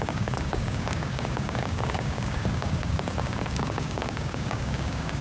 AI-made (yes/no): yes